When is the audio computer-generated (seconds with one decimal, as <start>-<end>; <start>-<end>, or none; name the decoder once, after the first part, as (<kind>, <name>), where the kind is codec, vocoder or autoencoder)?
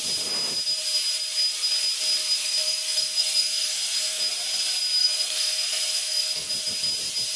2.4-4.2 (codec, SNAC); 5.0-6.5